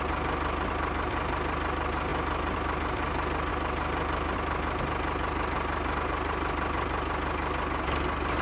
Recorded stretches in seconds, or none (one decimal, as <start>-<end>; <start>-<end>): 0.0-8.4